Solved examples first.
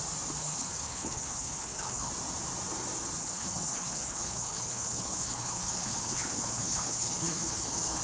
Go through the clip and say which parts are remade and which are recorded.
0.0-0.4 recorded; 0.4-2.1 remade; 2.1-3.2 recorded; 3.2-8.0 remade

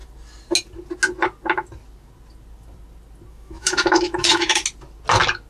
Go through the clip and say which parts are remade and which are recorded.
0.0-3.3 recorded; 3.3-4.6 remade; 4.6-5.5 recorded

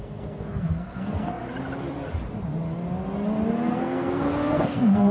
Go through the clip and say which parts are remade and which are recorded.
0.0-1.4 remade; 1.4-3.5 recorded; 3.5-5.1 remade

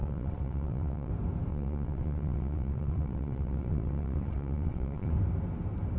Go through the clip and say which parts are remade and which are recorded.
0.0-1.1 remade; 1.1-1.5 recorded; 1.5-5.1 remade; 5.1-6.0 recorded

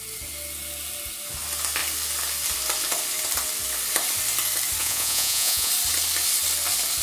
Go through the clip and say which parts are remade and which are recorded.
0.0-4.8 recorded; 4.8-5.7 remade; 5.7-7.0 recorded

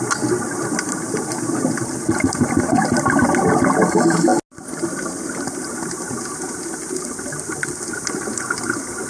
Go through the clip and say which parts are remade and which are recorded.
0.0-9.1 recorded